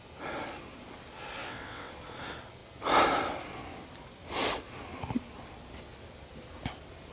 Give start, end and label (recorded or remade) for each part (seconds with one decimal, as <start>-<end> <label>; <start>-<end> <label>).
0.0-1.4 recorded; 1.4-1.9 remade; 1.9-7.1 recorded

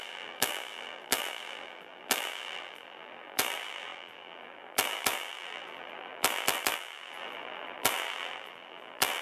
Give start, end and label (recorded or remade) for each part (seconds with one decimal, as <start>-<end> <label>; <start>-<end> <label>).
0.0-9.2 remade

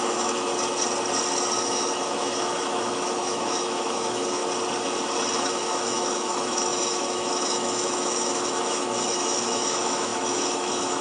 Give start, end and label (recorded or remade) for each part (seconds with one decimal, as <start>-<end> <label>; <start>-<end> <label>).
0.0-0.5 remade; 0.5-1.6 recorded; 1.6-4.4 remade; 4.4-5.4 recorded; 5.4-11.0 remade

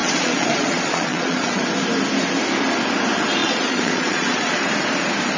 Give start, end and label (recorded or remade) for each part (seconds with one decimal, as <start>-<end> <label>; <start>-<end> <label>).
0.0-1.6 remade; 1.6-3.4 recorded; 3.4-4.5 remade; 4.5-5.4 recorded